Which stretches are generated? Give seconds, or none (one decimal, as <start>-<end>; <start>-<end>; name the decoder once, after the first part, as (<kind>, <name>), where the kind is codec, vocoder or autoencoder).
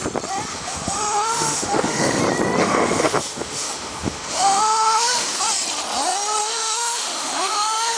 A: 0.5-2.2 (autoencoder, DAC-VAE); 2.6-5.4; 6.4-8.0